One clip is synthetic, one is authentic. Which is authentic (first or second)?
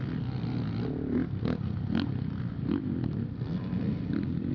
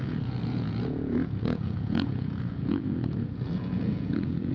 first